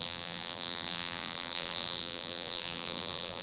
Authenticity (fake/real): fake